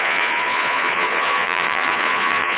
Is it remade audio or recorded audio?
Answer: remade